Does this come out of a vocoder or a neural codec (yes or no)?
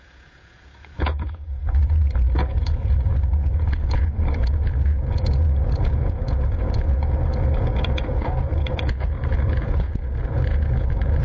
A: yes